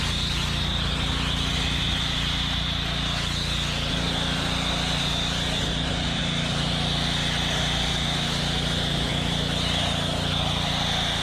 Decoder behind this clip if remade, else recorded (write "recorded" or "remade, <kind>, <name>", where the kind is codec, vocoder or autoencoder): recorded